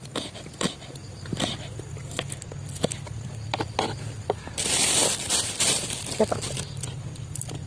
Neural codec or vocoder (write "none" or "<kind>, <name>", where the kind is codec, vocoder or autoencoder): none